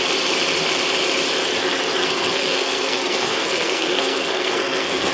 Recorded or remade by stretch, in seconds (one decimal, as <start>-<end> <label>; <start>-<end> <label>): 0.0-2.0 recorded; 2.0-5.1 remade